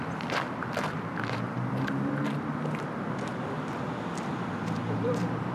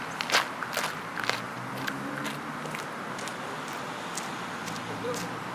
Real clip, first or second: second